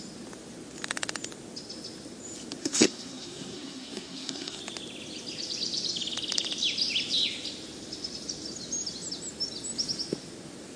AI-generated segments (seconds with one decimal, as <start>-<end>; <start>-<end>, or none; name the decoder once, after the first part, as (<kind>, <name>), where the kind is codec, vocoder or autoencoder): 2.6-4.6 (codec, SNAC)